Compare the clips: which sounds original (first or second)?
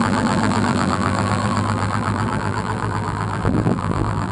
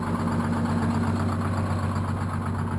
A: second